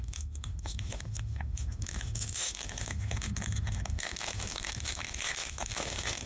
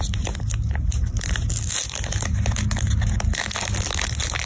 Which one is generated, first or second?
first